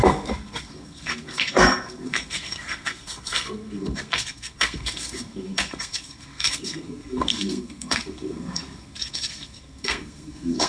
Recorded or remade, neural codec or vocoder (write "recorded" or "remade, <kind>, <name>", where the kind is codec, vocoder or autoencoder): remade, codec, SNAC